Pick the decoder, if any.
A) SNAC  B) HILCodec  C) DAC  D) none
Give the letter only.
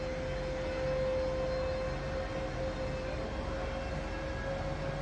D